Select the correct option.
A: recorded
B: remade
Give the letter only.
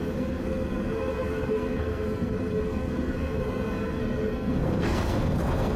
B